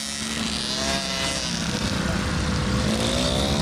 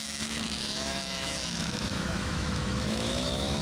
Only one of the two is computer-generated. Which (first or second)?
second